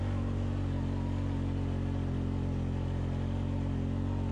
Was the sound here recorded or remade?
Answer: recorded